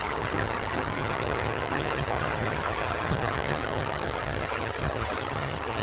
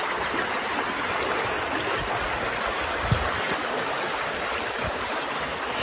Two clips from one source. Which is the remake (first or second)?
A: first